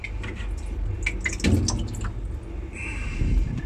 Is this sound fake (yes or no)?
no